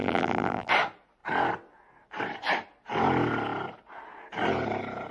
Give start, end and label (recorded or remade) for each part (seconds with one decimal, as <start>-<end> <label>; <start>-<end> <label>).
0.0-0.7 remade; 0.7-5.1 recorded